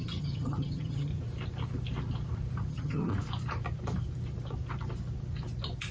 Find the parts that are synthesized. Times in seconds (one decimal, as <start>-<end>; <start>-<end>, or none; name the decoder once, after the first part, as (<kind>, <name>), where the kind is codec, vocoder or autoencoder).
0.0-1.1 (vocoder, HiFi-GAN); 2.7-3.1